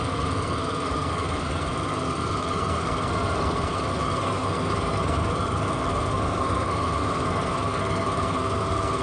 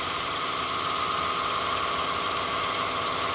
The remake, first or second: first